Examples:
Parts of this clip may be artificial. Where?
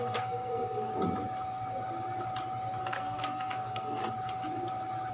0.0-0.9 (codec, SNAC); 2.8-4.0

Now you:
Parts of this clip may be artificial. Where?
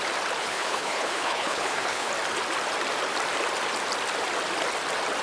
0.4-2.1 (codec, HILCodec)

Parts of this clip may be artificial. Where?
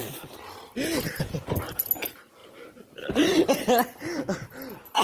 2.4-3.3 (vocoder, BigVGAN v2)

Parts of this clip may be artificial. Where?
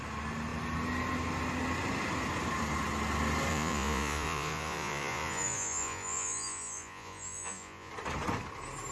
3.5-7.9 (vocoder, Vocos)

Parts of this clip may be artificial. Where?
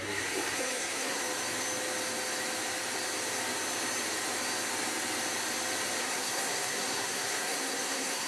0.0-1.2 (codec, SNAC); 6.0-8.3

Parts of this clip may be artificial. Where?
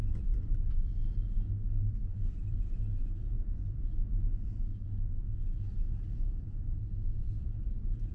0.0-1.0 (vocoder, BigVGAN v2); 1.8-8.1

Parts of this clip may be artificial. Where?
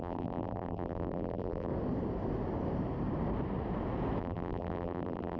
0.0-1.7 (vocoder, BigVGAN v2); 4.2-5.4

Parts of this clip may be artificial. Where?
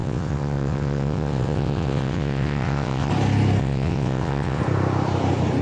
0.0-3.1 (vocoder, WaveNeXt); 3.6-4.6